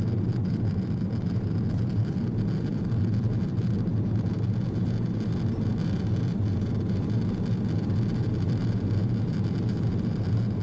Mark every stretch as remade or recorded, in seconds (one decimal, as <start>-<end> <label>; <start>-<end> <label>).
0.0-10.6 recorded